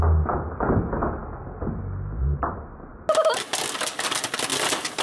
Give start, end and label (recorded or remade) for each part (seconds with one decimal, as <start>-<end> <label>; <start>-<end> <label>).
0.0-5.0 recorded